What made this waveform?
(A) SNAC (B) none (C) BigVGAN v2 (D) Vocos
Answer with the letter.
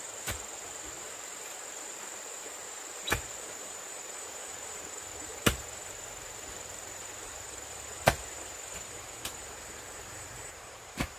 C